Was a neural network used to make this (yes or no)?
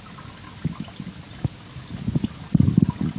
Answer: no